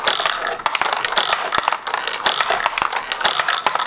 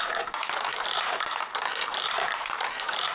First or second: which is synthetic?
second